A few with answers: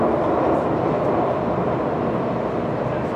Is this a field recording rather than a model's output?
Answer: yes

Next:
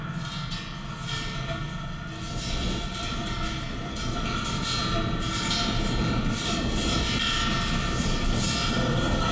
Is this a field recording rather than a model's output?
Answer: yes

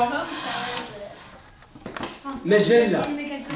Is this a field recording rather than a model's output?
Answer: yes